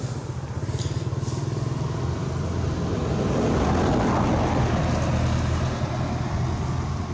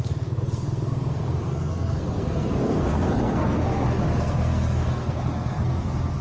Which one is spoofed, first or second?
second